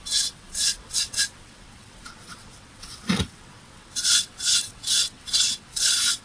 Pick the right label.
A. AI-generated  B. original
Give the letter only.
A